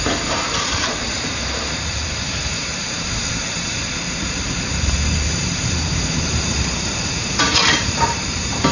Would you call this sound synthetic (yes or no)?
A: yes